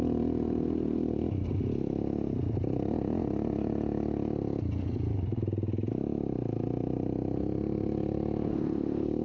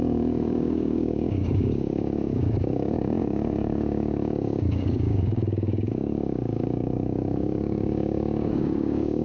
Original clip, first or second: first